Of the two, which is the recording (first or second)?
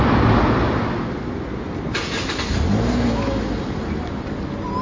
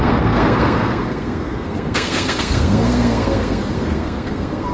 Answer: first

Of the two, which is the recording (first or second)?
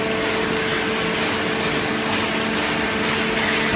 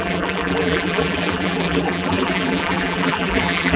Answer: first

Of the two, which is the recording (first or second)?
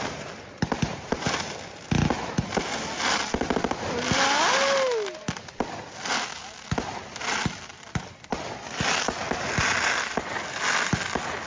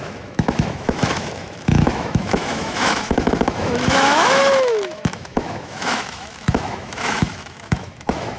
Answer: first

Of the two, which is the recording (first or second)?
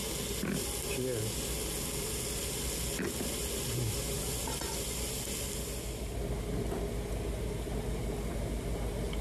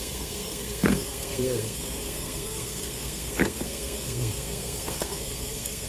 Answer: first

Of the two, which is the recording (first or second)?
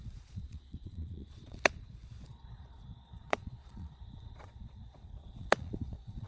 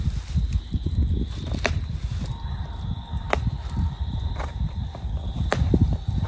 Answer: second